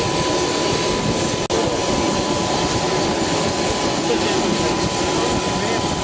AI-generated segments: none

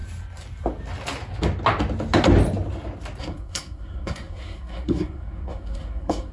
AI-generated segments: 3.2-6.3

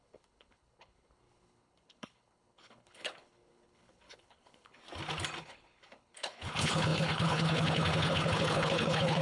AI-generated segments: 0.0-4.8; 5.4-9.2

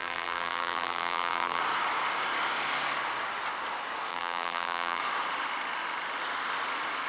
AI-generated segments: 0.0-1.6; 4.1-5.0

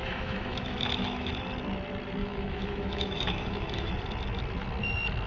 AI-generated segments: 0.0-1.3; 2.2-3.9

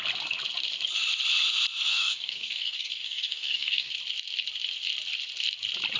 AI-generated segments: 1.9-3.9

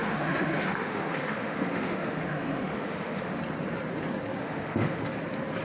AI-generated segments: 0.0-3.4; 4.4-5.0